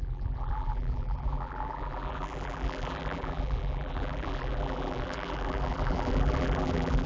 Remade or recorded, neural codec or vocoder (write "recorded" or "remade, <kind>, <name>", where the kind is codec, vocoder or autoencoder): remade, vocoder, BigVGAN v2